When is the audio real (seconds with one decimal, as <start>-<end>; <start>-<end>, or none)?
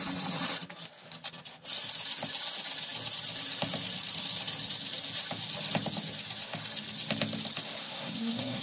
0.0-7.8